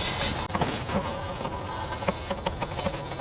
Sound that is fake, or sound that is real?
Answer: real